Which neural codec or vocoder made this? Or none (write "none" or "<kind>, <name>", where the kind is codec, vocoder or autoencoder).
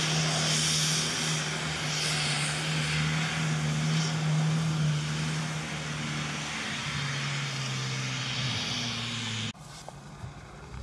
none